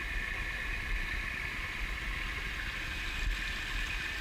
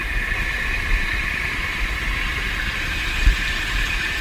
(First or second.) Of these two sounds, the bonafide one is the first